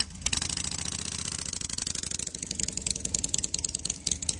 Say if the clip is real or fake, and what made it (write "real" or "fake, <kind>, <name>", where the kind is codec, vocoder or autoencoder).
fake, vocoder, BigVGAN v2